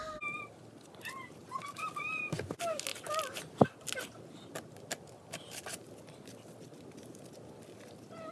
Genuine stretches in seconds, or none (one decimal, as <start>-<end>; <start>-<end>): 0.0-8.3